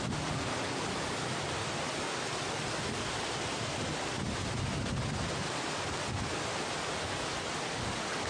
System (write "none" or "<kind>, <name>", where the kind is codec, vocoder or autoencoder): none